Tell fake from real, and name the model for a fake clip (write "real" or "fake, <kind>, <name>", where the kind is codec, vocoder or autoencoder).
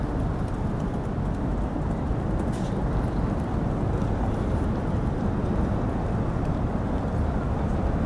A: real